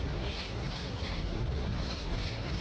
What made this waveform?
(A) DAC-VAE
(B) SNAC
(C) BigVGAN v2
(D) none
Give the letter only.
B